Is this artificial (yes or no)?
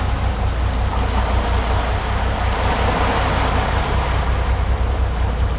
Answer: no